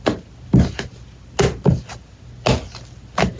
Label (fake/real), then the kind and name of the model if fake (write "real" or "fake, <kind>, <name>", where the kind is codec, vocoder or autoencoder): real